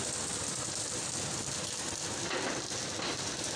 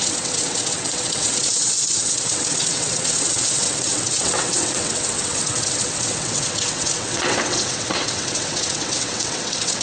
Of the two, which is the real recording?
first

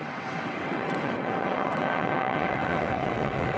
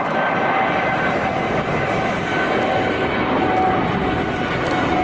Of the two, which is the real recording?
second